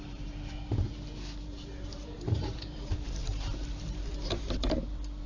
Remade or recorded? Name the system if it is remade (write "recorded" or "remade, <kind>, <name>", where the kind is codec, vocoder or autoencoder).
remade, vocoder, BigVGAN v2